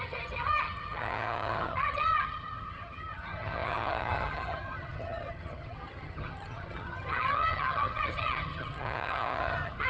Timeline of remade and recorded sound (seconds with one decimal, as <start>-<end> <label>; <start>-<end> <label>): 0.0-9.9 remade